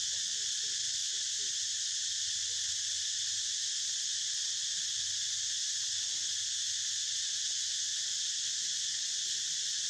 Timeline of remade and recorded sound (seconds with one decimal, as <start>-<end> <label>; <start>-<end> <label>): 0.0-9.9 recorded